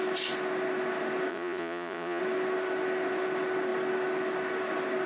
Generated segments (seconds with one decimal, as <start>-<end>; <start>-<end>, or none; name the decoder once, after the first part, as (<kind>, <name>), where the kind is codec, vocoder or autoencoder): 1.3-2.2 (vocoder, Vocos)